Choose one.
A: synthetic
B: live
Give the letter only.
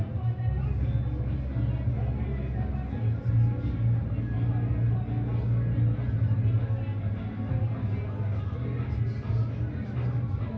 B